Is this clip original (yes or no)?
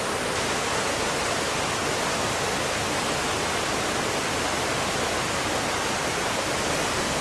yes